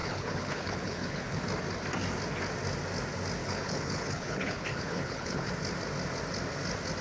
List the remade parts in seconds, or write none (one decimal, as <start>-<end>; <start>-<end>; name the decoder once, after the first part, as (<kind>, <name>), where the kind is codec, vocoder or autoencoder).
0.0-1.4 (codec, HILCodec); 3.4-5.5